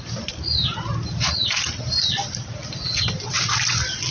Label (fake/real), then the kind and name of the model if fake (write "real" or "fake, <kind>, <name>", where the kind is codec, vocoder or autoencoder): fake, vocoder, BigVGAN v2